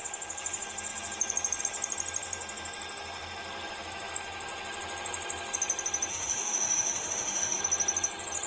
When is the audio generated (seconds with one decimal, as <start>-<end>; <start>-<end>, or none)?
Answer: 6.1-7.6